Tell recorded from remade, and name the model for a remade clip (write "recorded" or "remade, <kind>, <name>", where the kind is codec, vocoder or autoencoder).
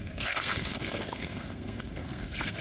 remade, codec, SNAC